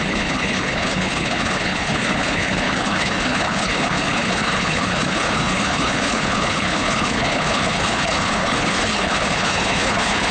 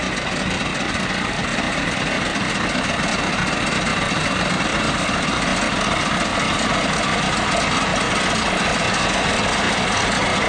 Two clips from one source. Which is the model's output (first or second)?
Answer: first